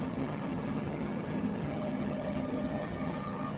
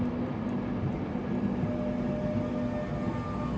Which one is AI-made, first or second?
first